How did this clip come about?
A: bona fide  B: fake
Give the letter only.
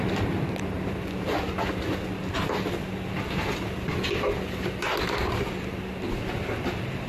A